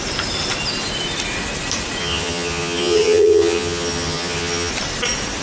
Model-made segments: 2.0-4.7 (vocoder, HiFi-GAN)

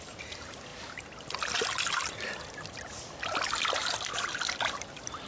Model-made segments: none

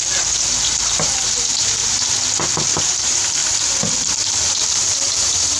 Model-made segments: 0.0-1.8 (vocoder, BigVGAN v2); 2.8-3.4; 4.9-5.6